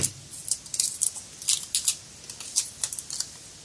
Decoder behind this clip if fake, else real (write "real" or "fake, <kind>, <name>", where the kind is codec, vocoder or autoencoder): real